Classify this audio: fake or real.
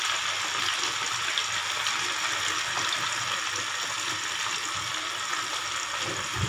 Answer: real